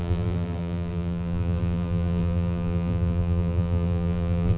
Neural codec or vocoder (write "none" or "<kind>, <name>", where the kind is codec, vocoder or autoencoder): vocoder, BigVGAN v2